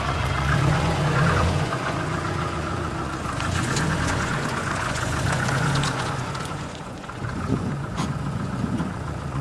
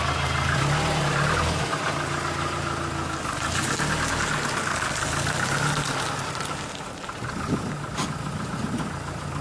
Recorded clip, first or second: second